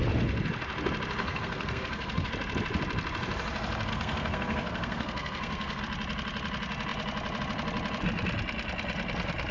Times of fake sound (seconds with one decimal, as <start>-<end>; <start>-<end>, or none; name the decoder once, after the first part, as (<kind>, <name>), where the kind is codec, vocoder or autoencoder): 1.2-2.3 (codec, SNAC); 3.9-5.8